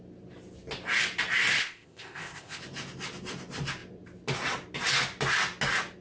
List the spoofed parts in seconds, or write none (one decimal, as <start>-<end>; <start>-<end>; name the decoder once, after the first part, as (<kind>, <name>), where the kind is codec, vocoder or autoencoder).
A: 1.6-2.6 (codec, ZipCodec)